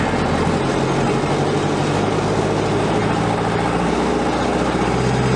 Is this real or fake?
real